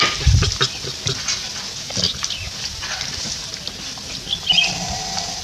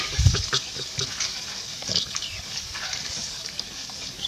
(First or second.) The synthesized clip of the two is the second